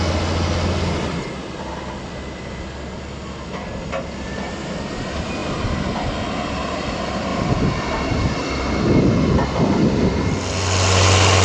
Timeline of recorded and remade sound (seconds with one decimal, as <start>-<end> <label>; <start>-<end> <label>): 0.0-11.4 recorded